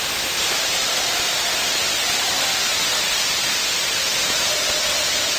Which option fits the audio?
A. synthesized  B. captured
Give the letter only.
B